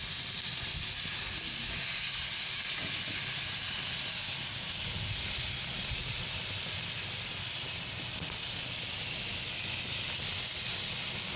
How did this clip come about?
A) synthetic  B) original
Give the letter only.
B